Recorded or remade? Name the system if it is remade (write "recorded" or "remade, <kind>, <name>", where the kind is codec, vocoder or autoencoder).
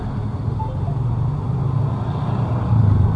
recorded